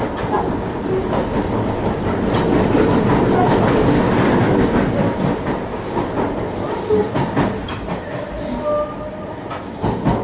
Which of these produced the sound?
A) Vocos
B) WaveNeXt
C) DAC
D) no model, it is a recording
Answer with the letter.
D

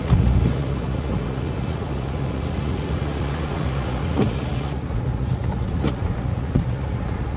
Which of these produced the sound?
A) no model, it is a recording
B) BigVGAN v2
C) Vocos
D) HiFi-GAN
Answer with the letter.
C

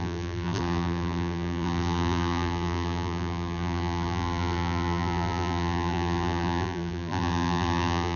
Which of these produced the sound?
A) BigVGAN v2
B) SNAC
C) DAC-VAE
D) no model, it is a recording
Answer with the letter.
A